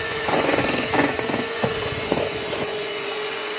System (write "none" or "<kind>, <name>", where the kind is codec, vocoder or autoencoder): vocoder, Vocos